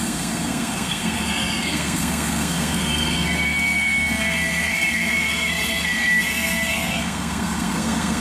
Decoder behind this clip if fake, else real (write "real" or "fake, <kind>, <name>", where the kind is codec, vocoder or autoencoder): fake, codec, SNAC